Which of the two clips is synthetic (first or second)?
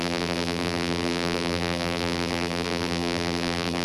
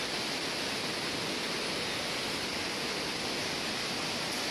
first